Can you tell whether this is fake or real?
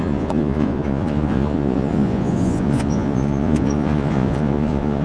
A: fake